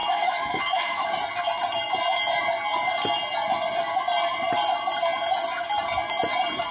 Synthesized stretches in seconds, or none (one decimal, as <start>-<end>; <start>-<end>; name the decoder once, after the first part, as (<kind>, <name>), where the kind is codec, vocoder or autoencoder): 0.0-1.1 (autoencoder, DAC-VAE)

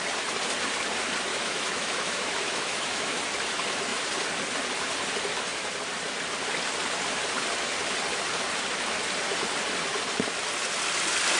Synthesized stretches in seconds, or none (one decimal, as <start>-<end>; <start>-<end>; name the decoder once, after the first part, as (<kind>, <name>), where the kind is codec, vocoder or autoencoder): 1.3-3.2 (autoencoder, DAC-VAE)

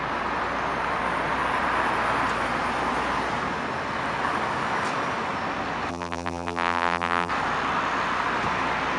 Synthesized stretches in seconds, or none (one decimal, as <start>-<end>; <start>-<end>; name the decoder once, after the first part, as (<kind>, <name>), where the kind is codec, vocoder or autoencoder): 5.9-7.3 (vocoder, BigVGAN v2)

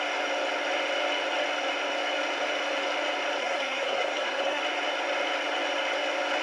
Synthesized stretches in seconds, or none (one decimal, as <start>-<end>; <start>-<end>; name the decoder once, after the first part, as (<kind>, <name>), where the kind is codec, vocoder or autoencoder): 3.4-4.6 (codec, SNAC)

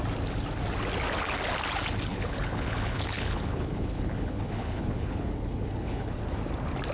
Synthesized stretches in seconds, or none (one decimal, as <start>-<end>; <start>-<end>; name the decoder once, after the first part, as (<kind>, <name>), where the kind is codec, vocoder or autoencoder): 2.1-6.2 (codec, HILCodec)